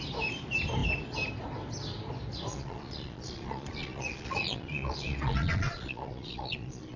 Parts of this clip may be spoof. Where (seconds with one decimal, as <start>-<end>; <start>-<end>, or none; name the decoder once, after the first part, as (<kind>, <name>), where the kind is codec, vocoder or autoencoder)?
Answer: 2.5-7.0 (vocoder, Vocos)